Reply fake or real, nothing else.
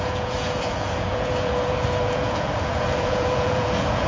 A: fake